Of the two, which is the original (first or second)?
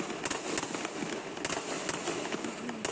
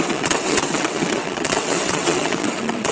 first